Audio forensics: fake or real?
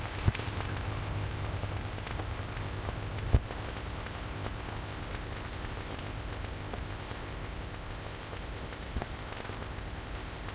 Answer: fake